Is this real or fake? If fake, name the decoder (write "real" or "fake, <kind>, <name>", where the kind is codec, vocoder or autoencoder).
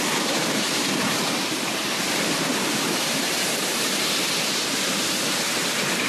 fake, vocoder, BigVGAN v2